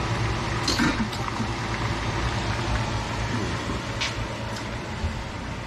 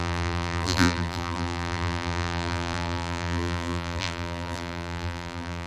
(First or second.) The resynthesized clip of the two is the second